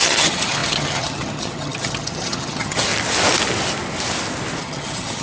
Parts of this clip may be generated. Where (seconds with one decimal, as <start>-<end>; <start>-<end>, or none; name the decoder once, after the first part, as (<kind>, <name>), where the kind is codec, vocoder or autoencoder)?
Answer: 0.0-2.9 (vocoder, HiFi-GAN); 4.6-5.2